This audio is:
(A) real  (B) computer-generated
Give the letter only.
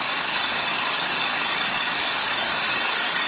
B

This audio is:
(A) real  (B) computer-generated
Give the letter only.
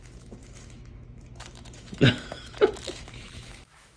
B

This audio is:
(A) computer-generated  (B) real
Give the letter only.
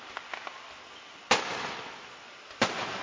B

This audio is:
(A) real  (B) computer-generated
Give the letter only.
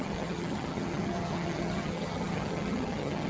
B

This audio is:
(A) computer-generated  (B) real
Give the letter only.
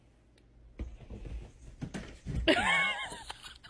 B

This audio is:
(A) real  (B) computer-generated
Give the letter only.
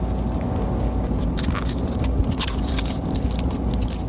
A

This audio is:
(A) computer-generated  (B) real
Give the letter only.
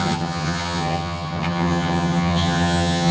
A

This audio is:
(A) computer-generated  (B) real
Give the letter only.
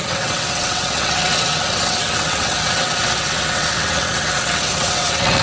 A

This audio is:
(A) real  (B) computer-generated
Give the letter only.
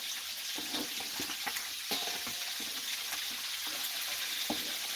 A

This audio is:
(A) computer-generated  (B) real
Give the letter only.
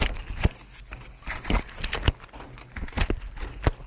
B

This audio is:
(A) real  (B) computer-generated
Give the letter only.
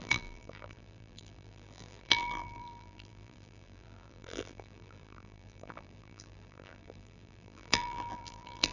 B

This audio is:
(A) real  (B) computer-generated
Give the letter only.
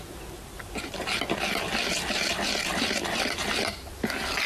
A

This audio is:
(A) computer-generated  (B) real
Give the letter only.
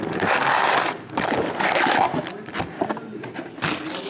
B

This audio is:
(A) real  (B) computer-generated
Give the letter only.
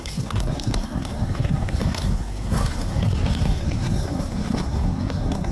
B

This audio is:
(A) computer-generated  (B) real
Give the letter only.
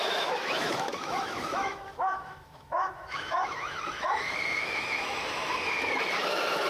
A